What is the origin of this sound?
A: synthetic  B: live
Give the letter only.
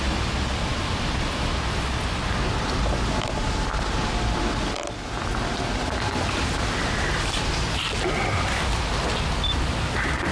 B